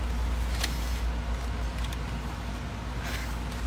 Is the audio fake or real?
real